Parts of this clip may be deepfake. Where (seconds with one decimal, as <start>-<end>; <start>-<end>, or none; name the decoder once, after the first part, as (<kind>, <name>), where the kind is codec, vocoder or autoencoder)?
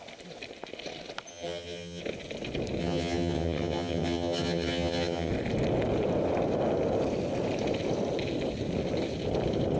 1.3-2.0 (vocoder, HiFi-GAN); 2.8-5.3